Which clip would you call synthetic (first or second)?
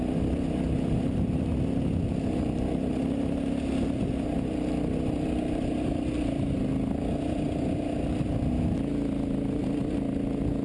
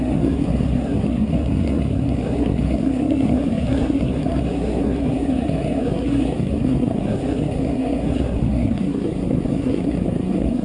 second